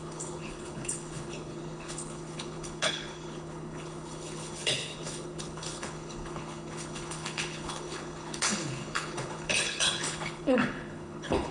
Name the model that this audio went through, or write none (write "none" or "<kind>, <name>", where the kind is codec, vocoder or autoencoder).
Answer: codec, HILCodec